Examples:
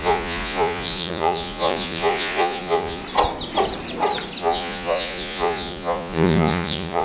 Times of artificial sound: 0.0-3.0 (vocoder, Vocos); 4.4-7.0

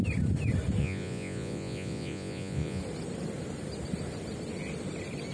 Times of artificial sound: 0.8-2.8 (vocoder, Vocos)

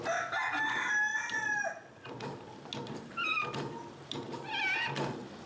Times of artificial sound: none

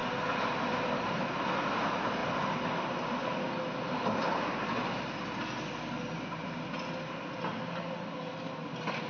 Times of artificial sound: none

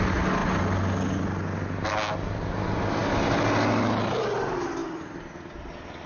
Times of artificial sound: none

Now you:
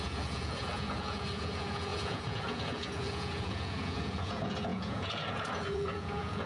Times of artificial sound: 0.0-6.5 (vocoder, Vocos)

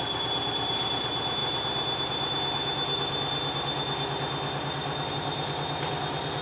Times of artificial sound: none